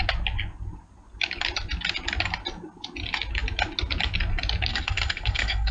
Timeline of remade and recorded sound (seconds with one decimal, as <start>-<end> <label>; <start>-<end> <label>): 0.0-4.7 recorded; 4.7-5.7 remade